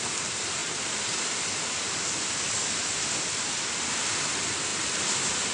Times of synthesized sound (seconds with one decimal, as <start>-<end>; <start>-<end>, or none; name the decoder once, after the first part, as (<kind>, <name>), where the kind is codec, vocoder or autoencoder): none